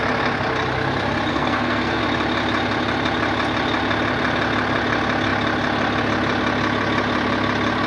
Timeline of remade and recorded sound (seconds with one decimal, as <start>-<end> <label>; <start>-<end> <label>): 0.0-1.3 recorded; 1.3-2.0 remade; 2.0-7.9 recorded